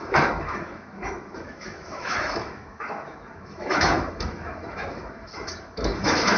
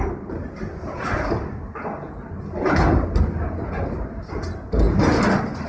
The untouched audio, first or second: second